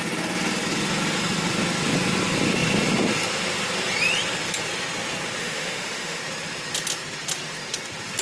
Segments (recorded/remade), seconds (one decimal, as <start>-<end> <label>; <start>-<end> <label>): 0.0-5.4 recorded; 5.4-6.2 remade; 6.2-8.2 recorded